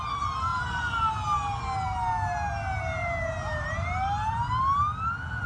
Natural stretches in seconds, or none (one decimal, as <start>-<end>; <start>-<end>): 0.0-5.5

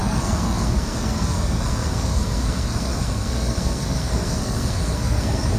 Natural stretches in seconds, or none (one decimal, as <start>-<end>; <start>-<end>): none

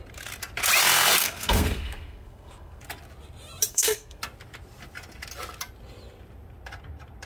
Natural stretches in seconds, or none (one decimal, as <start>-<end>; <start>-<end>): 0.0-1.2; 2.8-3.7; 4.2-7.3

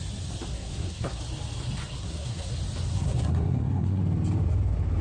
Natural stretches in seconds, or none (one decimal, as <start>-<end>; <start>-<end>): 0.0-0.5; 1.2-2.0; 2.5-2.9; 4.0-5.0

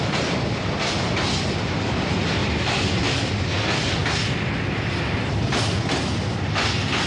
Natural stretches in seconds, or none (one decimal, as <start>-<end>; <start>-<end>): 0.0-7.1

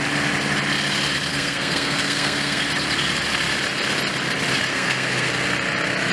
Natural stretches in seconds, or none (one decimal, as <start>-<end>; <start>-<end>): 0.0-1.3; 2.6-4.7; 5.3-6.1

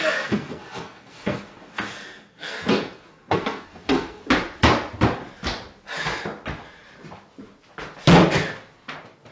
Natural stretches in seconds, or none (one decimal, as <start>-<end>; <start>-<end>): 4.2-9.3